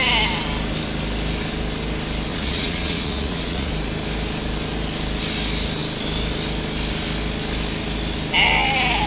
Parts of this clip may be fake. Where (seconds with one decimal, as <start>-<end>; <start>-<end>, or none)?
2.3-3.7